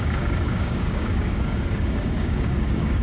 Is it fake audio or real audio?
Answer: fake